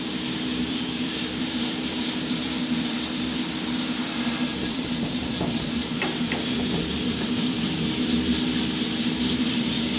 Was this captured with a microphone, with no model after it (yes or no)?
no